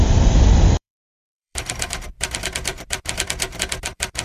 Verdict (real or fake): fake